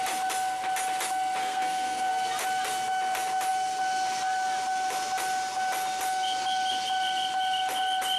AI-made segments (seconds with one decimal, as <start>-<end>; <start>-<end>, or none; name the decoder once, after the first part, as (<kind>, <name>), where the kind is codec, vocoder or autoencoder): 1.4-2.1 (codec, SNAC)